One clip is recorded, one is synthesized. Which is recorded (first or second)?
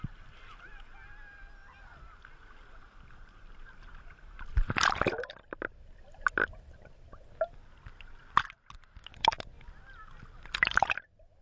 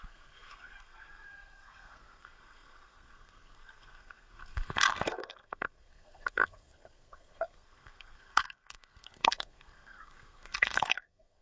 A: first